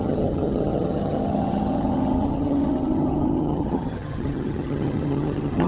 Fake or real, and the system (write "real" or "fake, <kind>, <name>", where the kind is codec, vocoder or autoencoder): fake, vocoder, HiFi-GAN